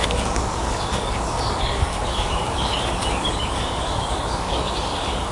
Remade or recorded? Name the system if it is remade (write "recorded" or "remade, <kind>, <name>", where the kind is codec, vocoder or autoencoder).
remade, codec, DAC